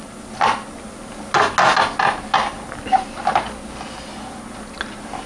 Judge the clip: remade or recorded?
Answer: recorded